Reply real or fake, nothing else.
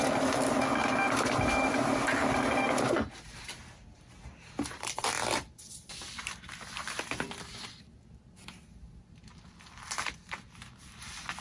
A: real